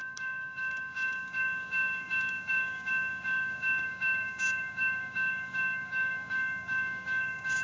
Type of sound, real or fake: fake